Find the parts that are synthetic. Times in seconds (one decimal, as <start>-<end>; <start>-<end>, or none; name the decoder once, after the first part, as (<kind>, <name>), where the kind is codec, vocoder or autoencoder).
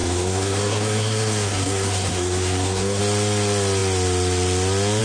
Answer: 0.0-3.0 (codec, SNAC)